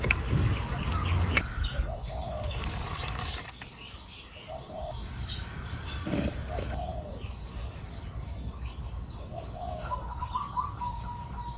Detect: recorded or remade remade